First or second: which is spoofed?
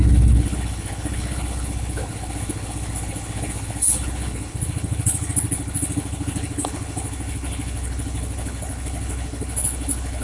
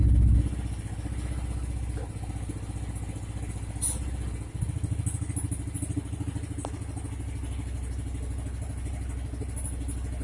first